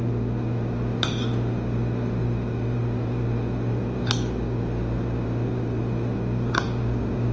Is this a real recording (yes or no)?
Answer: yes